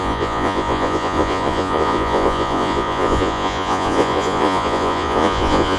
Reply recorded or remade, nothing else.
remade